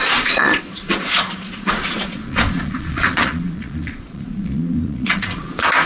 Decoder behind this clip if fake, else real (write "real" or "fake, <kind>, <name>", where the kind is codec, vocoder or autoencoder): fake, vocoder, Vocos